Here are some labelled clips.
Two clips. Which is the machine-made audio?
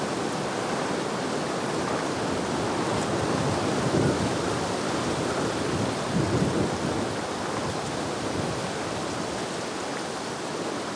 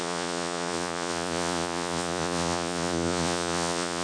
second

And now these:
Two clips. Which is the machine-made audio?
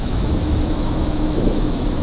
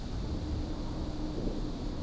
first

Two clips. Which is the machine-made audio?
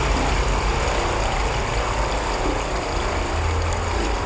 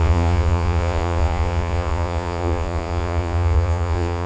second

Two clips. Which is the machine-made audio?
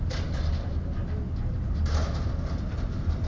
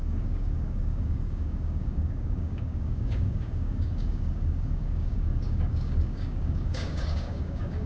second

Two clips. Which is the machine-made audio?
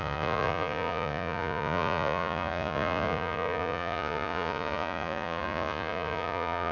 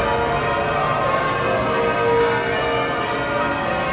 first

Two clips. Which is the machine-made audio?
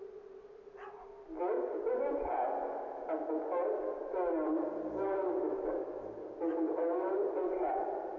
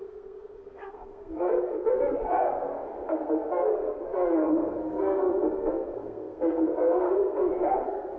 second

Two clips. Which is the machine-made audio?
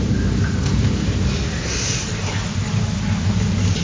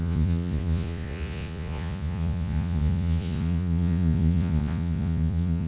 second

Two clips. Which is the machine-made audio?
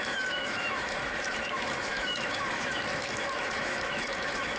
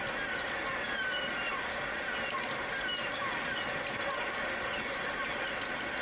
first